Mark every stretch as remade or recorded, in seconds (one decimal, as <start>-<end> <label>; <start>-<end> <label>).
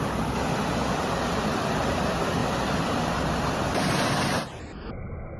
0.0-5.4 recorded